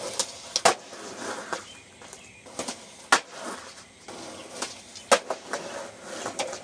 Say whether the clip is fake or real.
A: real